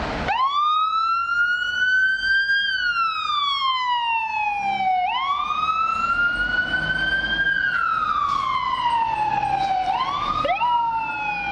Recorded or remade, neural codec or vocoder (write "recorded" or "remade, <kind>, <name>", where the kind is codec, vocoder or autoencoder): recorded